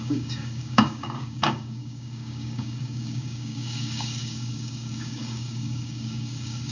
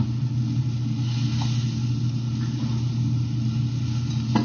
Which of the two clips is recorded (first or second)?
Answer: second